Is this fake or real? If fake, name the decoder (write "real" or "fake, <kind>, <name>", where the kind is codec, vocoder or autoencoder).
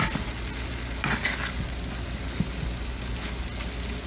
real